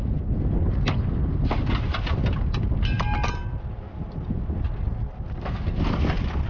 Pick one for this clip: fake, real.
real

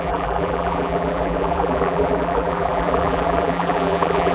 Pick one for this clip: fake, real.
fake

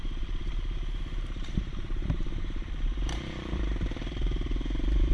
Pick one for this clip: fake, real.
fake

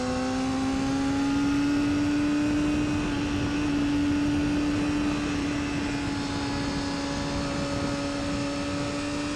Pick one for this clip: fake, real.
real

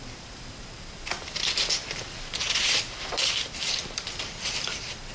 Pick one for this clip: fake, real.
fake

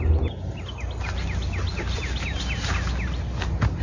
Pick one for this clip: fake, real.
real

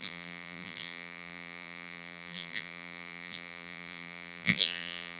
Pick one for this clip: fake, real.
fake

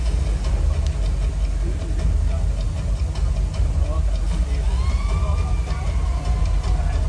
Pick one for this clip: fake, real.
real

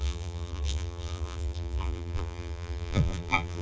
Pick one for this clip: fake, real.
fake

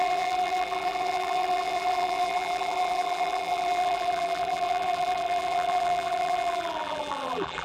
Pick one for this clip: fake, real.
fake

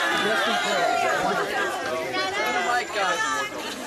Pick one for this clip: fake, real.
fake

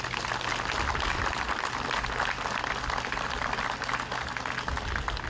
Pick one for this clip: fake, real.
real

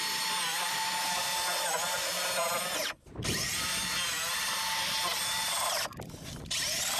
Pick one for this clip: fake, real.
real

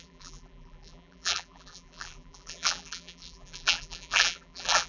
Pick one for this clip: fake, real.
fake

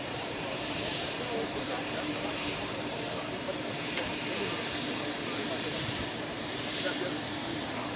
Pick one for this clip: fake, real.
fake